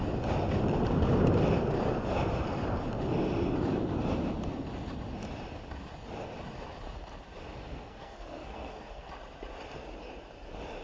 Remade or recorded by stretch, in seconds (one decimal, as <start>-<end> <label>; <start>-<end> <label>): 0.0-7.7 recorded; 7.7-9.1 remade; 9.1-10.8 recorded